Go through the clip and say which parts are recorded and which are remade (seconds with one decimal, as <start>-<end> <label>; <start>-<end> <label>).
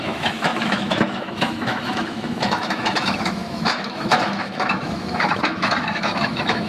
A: 0.0-6.7 remade